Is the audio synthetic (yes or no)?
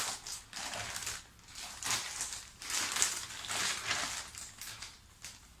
no